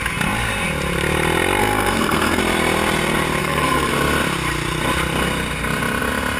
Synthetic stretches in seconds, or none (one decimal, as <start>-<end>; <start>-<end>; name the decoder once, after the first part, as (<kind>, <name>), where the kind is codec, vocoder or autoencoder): 1.6-2.4 (codec, SNAC); 3.4-3.9